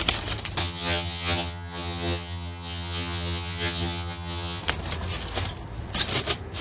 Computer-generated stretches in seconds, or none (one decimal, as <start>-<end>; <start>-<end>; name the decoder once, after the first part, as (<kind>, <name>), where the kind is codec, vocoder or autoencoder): 0.6-4.6 (vocoder, HiFi-GAN)